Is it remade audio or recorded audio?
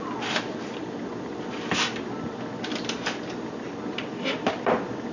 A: recorded